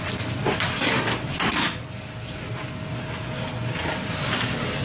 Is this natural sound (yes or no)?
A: yes